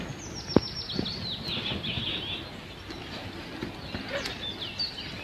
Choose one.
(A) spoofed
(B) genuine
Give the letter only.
B